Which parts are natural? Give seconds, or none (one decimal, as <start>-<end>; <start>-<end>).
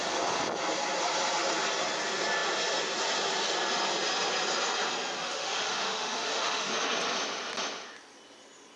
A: 0.0-5.2; 6.7-8.8